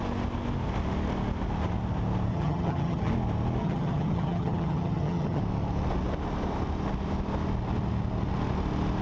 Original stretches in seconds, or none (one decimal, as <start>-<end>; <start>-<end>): 0.0-2.3; 3.1-3.6; 5.4-9.0